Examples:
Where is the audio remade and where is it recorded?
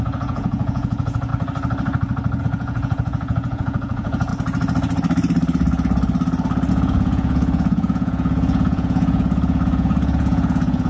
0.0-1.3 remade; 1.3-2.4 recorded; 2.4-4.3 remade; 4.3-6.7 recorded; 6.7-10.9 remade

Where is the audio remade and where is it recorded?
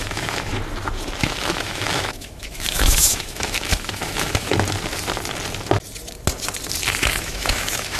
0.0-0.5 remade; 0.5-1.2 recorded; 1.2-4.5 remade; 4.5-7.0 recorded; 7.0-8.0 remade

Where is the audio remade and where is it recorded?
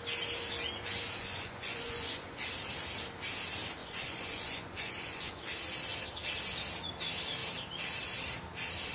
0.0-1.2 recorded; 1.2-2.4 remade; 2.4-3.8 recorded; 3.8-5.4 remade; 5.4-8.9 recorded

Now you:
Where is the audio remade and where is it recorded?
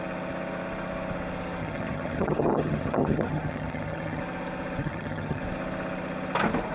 0.0-1.6 recorded; 1.6-4.2 remade; 4.2-4.8 recorded; 4.8-5.4 remade; 5.4-6.7 recorded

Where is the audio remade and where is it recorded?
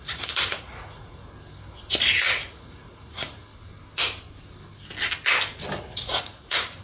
0.0-1.2 remade; 1.2-2.0 recorded; 2.0-3.5 remade; 3.5-5.8 recorded; 5.8-6.8 remade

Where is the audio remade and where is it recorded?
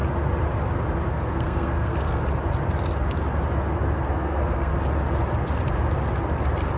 0.0-1.1 recorded; 1.1-2.2 remade; 2.2-4.1 recorded; 4.1-4.7 remade; 4.7-6.8 recorded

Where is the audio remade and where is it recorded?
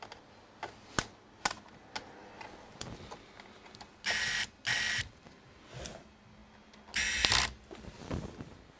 0.0-8.8 recorded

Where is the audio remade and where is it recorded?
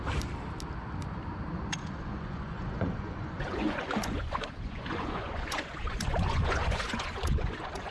0.0-1.5 recorded; 1.5-7.9 remade